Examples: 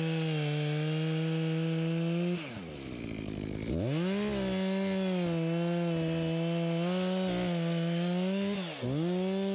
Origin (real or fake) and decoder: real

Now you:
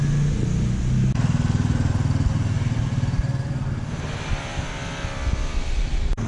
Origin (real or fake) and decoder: real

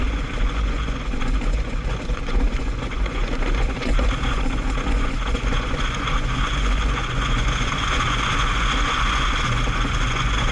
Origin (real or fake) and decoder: fake, vocoder, Vocos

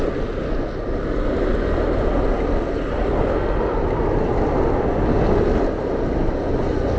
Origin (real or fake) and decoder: real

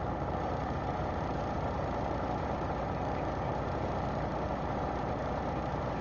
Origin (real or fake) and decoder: fake, vocoder, BigVGAN v2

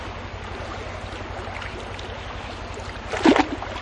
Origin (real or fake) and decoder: real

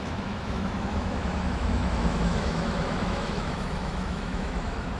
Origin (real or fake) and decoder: fake, autoencoder, DAC-VAE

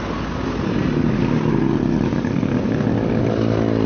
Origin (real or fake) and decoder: real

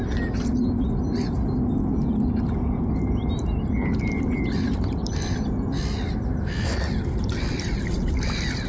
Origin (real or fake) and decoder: real